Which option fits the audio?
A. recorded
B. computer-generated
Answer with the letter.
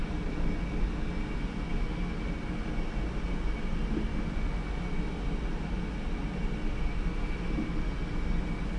A